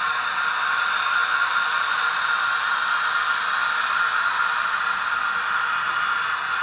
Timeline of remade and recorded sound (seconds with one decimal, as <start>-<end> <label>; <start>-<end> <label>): 0.0-6.6 recorded